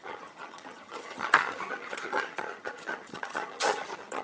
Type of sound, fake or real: fake